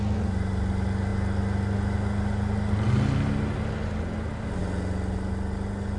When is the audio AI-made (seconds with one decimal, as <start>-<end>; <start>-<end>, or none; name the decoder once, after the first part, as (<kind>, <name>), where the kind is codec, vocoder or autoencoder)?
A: none